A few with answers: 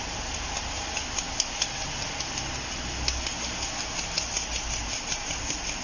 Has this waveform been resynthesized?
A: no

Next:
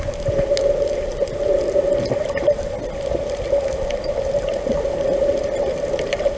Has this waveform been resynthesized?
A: no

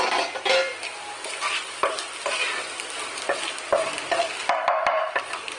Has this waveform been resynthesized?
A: no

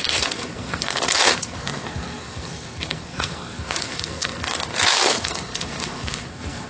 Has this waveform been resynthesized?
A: yes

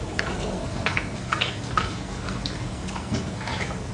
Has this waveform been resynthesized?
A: yes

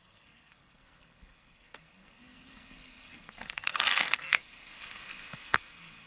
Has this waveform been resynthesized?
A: yes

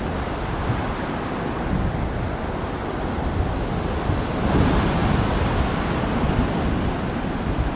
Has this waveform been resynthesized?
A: no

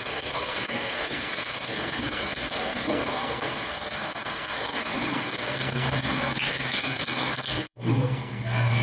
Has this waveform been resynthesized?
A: yes